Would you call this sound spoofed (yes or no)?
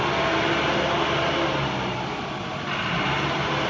no